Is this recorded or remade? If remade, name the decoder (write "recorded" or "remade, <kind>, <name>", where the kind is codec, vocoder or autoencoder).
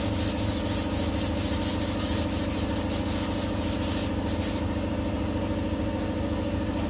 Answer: recorded